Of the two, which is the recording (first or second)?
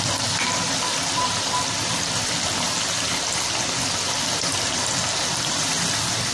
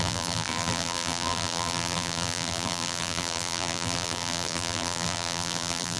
first